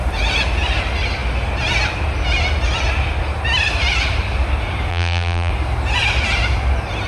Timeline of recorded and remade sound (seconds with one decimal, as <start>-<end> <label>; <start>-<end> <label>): 0.0-4.9 recorded; 4.9-5.5 remade; 5.5-7.1 recorded

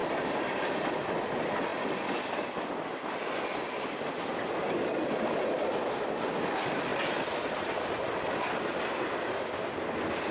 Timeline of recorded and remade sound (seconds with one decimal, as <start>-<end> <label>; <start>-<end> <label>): 0.0-10.3 recorded

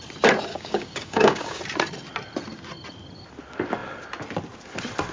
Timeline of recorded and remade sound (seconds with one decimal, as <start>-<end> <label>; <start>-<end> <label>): 0.0-0.5 recorded; 0.5-1.6 remade; 1.6-5.1 recorded

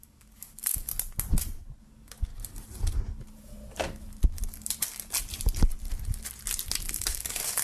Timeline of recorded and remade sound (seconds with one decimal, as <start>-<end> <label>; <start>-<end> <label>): 0.0-0.9 remade; 0.9-1.8 recorded; 1.8-2.3 remade; 2.3-6.9 recorded; 6.9-7.6 remade

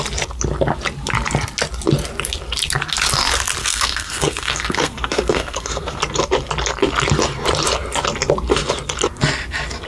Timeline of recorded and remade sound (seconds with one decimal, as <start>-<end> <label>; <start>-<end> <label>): 0.0-3.6 recorded; 3.6-6.0 remade; 6.0-9.9 recorded

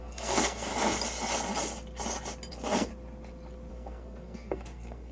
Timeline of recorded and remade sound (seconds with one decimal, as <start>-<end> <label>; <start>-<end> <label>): 0.0-0.7 remade; 0.7-2.5 recorded; 2.5-2.9 remade; 2.9-3.7 recorded; 3.7-5.1 remade

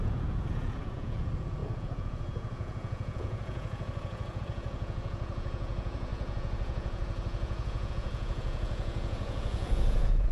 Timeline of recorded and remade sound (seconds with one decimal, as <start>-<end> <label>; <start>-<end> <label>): 0.0-10.3 remade